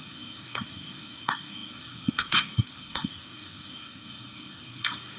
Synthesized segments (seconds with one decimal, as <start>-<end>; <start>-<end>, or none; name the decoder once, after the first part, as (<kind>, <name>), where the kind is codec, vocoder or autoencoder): 0.0-5.2 (codec, SNAC)